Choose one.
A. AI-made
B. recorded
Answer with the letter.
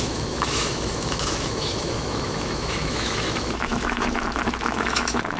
A